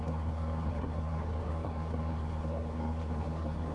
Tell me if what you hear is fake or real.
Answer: fake